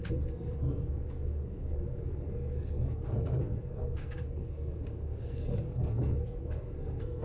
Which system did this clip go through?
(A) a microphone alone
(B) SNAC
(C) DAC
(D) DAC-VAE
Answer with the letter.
B